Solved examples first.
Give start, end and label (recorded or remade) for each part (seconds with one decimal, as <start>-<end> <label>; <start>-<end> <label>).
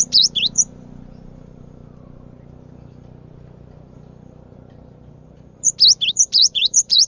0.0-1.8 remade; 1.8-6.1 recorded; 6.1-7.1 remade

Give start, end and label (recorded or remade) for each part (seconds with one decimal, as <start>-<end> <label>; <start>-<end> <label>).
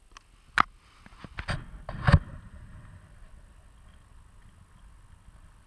0.0-2.3 recorded; 2.3-3.0 remade; 3.0-5.7 recorded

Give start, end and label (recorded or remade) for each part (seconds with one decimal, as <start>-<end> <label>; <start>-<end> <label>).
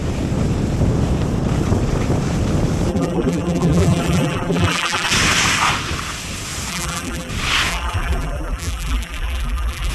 0.0-2.9 recorded; 2.9-5.1 remade; 5.1-6.7 recorded; 6.7-7.3 remade; 7.3-7.7 recorded; 7.7-9.9 remade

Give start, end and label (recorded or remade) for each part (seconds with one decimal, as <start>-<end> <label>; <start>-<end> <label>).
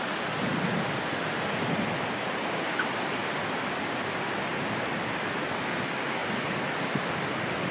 0.0-0.5 recorded; 0.5-1.4 remade; 1.4-3.2 recorded; 3.2-3.9 remade; 3.9-6.2 recorded; 6.2-7.0 remade; 7.0-7.7 recorded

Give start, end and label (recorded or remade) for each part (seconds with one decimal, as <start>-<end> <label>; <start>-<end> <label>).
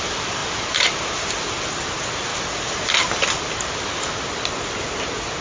0.0-0.4 recorded; 0.4-1.3 remade; 1.3-5.4 recorded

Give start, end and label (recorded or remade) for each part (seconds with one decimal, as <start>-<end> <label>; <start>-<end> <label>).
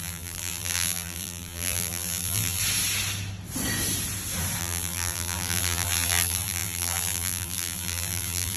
0.0-2.6 remade; 2.6-4.6 recorded; 4.6-8.6 remade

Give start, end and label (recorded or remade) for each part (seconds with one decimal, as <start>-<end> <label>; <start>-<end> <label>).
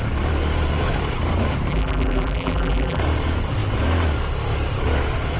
0.0-1.7 recorded; 1.7-3.0 remade; 3.0-5.4 recorded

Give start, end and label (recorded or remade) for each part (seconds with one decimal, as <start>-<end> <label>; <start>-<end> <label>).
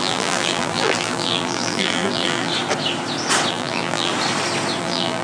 0.0-2.5 remade; 2.5-3.5 recorded; 3.5-4.1 remade; 4.1-4.8 recorded; 4.8-5.2 remade